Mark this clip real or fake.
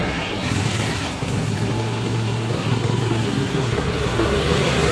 fake